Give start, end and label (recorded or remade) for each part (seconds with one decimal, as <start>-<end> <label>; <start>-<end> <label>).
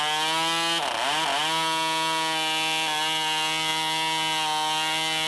0.0-5.3 recorded